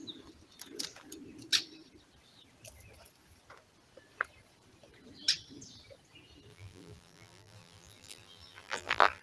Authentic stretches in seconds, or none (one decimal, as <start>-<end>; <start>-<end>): 0.0-6.5